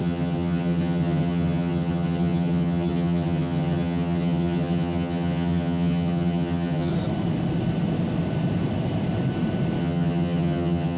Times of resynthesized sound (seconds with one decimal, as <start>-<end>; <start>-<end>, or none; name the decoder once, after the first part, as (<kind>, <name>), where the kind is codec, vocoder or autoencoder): 0.0-6.9 (vocoder, HiFi-GAN); 9.8-11.0